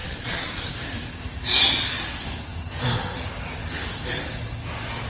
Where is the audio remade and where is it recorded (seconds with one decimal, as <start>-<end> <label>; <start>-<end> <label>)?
0.0-0.7 remade; 0.7-5.1 recorded